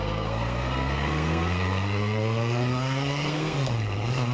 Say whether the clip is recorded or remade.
remade